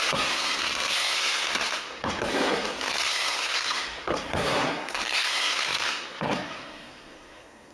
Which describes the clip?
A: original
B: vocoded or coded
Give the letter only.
B